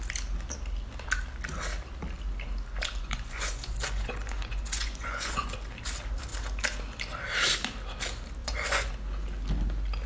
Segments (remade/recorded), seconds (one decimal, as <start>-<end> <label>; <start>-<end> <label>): 0.0-3.0 recorded; 3.0-5.5 remade; 5.5-8.4 recorded; 8.4-8.9 remade; 8.9-10.1 recorded